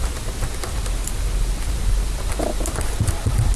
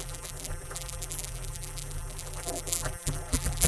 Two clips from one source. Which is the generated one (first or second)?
second